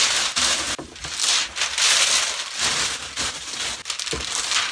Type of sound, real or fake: real